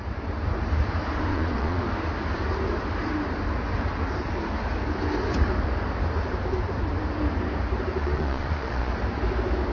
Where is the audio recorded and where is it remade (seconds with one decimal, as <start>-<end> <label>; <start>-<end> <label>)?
0.0-1.3 recorded; 1.3-1.8 remade; 1.8-8.0 recorded; 8.0-8.9 remade; 8.9-9.7 recorded